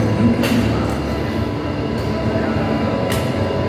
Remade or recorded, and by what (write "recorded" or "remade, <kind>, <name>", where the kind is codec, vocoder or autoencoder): recorded